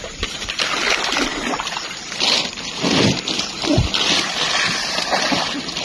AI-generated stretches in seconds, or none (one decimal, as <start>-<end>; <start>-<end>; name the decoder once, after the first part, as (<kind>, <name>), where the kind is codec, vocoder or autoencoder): none